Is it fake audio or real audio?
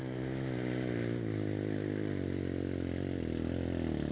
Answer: real